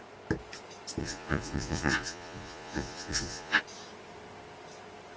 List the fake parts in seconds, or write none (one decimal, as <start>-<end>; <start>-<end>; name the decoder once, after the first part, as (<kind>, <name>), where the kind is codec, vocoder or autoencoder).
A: 1.0-3.6 (vocoder, Vocos)